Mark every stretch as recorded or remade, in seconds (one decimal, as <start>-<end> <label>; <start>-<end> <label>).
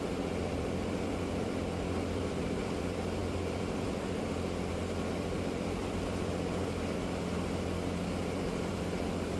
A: 0.0-6.6 remade; 6.6-8.7 recorded; 8.7-9.4 remade